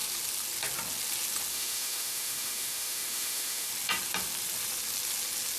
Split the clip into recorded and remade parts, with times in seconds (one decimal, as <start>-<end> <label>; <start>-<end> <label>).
0.0-1.5 recorded; 1.5-3.7 remade; 3.7-5.6 recorded